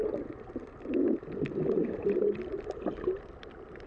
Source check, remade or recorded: recorded